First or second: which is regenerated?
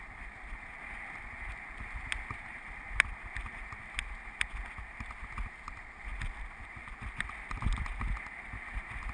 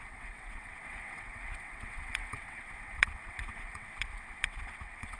second